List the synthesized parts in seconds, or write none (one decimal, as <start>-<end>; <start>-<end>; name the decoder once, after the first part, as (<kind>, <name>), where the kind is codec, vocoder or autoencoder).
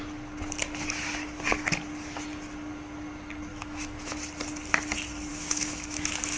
3.5-4.1 (autoencoder, DAC-VAE); 5.3-6.4